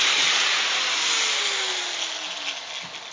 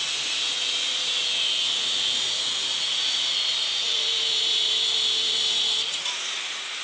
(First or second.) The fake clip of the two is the second